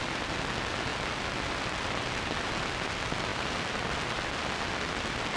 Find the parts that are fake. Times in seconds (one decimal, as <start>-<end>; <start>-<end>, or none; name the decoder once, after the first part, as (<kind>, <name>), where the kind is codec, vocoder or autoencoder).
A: none